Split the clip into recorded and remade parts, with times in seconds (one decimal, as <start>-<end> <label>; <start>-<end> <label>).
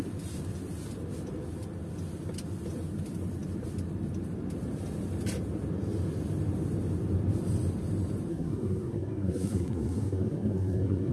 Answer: 0.0-8.3 recorded; 8.3-11.1 remade